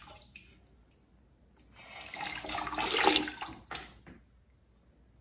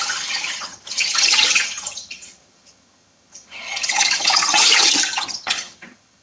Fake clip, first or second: second